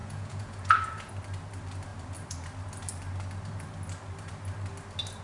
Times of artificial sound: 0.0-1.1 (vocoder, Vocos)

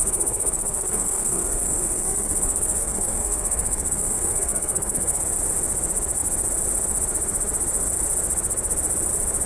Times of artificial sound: 0.0-5.2 (codec, SNAC)

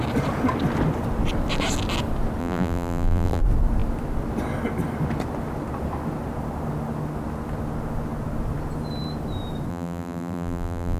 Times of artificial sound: 2.4-3.4 (vocoder, BigVGAN v2); 9.7-11.0

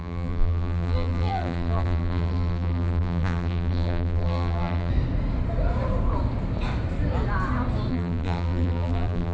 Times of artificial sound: 0.0-4.9 (vocoder, BigVGAN v2); 7.9-9.3

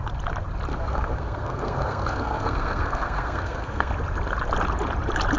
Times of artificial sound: 0.7-3.9 (codec, SNAC)

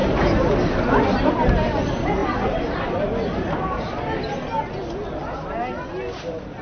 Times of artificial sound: 2.2-2.8 (vocoder, BigVGAN v2)

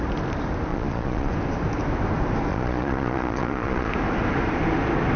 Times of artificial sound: 0.7-1.3 (vocoder, Vocos); 2.5-3.9